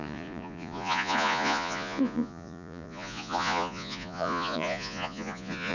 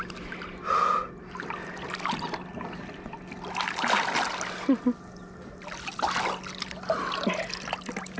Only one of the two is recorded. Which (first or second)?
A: second